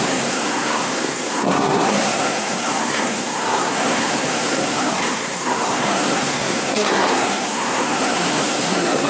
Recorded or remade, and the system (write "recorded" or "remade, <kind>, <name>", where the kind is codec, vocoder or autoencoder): remade, codec, SNAC